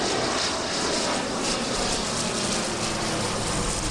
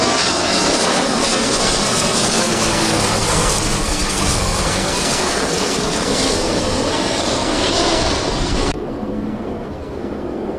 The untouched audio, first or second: first